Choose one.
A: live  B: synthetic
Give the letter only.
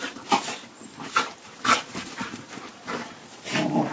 A